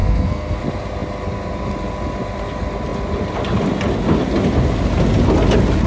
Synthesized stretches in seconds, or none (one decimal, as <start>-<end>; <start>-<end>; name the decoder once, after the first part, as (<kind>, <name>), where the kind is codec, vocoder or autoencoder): 0.0-0.6 (codec, SNAC)